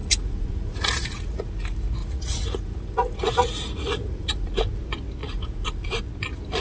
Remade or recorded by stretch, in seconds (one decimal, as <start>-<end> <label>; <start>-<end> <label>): 0.0-1.5 remade; 1.5-2.0 recorded; 2.0-4.5 remade; 4.5-5.2 recorded; 5.2-6.0 remade; 6.0-6.6 recorded